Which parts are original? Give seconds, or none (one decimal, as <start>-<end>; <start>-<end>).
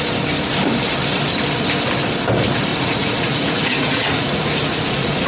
0.0-2.7